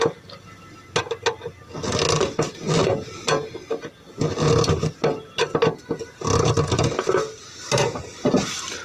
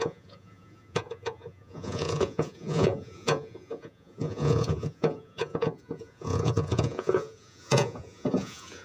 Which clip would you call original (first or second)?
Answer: first